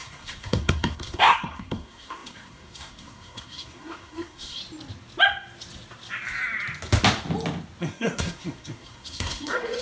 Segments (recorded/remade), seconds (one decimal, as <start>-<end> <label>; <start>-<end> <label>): 0.0-4.6 remade; 4.6-7.8 recorded; 7.8-9.8 remade